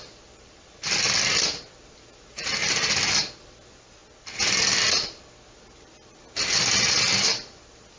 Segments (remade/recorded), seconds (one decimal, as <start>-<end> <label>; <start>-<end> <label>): 0.0-2.6 remade; 2.6-3.3 recorded; 3.3-4.0 remade; 4.0-6.9 recorded; 6.9-8.0 remade